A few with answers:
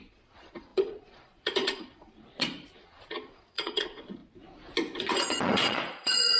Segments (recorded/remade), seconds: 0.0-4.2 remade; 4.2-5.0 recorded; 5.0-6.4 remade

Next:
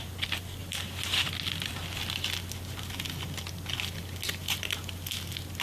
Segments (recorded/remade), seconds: 0.0-5.6 recorded

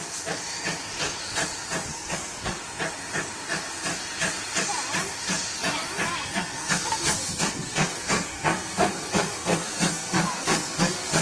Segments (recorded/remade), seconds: 0.0-1.9 recorded; 1.9-2.6 remade; 2.6-6.1 recorded; 6.1-11.2 remade

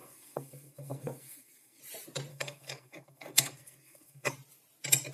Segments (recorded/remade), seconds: 0.0-1.8 remade; 1.8-2.3 recorded; 2.3-4.3 remade; 4.3-5.1 recorded